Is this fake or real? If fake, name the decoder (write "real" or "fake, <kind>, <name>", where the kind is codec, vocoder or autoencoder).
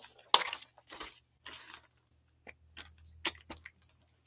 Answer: real